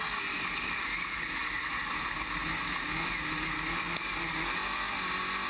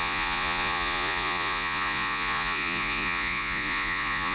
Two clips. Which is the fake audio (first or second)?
second